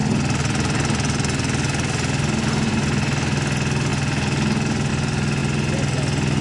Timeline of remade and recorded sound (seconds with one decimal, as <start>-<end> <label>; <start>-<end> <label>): 0.0-6.4 recorded